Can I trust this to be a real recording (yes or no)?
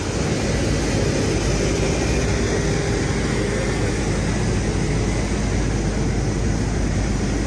yes